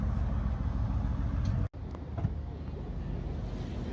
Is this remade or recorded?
recorded